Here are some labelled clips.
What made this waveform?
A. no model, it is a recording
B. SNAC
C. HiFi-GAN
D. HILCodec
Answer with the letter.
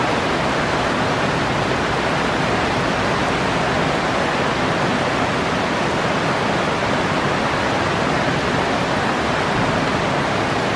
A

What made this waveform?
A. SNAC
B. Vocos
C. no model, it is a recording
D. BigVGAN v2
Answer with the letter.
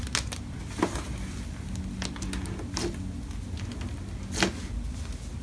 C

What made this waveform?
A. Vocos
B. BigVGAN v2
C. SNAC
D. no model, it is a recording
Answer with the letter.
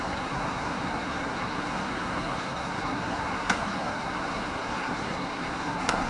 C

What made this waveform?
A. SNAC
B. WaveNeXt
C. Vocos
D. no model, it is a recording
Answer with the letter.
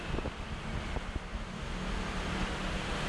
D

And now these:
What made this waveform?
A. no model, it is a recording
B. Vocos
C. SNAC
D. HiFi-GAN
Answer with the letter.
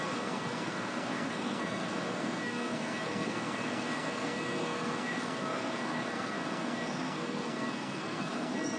C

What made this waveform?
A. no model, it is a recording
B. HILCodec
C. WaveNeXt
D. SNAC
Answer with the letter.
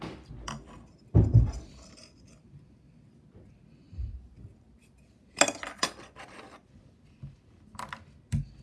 A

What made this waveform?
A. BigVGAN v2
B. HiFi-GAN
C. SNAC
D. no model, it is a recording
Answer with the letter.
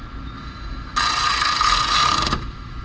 D